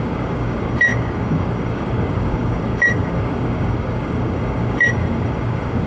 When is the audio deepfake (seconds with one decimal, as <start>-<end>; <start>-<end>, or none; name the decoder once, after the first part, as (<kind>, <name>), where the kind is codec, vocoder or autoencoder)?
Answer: 0.0-5.9 (codec, DAC)